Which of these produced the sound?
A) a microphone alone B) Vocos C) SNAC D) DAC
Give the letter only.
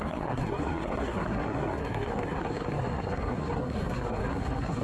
C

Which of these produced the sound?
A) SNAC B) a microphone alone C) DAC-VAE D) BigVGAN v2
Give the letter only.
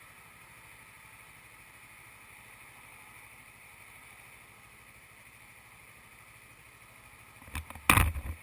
B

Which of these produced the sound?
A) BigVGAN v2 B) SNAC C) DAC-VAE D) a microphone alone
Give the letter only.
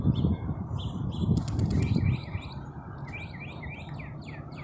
D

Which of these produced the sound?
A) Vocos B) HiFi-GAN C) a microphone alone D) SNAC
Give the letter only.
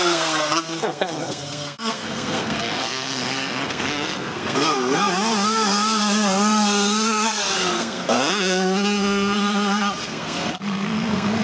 D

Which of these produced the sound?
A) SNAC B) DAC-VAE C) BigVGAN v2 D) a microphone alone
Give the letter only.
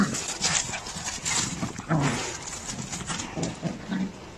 D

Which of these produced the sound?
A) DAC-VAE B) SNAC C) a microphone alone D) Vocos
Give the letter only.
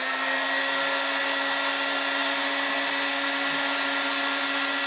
C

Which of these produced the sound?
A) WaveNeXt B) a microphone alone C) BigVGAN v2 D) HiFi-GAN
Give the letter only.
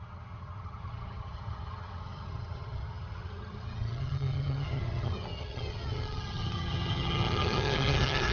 D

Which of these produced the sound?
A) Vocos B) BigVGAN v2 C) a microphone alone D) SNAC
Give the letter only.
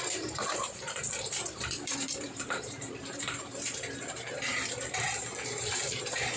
B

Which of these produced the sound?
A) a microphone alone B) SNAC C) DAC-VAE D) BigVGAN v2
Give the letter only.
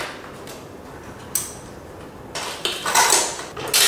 A